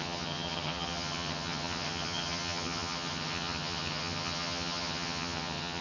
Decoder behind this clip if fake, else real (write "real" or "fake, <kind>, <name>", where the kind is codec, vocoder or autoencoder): fake, vocoder, HiFi-GAN